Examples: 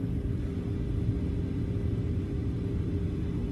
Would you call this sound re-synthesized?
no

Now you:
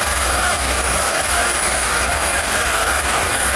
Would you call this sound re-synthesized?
yes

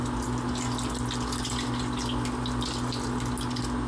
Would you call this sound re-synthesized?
no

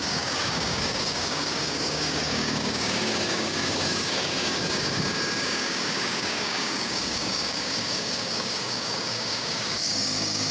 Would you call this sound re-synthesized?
yes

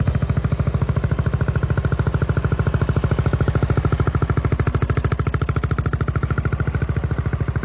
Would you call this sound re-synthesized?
no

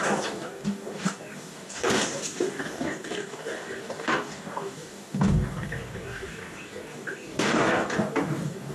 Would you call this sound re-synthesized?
yes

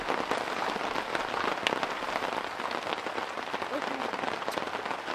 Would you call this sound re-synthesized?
no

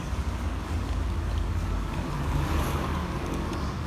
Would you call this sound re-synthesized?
yes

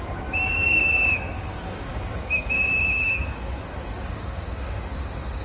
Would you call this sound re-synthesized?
yes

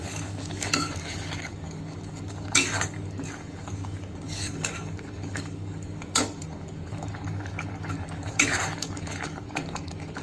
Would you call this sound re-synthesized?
yes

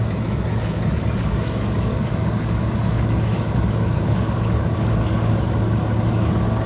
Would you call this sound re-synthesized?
yes